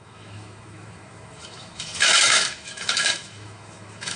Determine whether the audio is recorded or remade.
remade